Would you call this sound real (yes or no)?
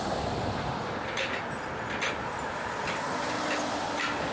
yes